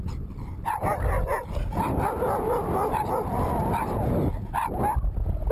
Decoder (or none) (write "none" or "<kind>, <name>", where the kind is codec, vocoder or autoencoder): none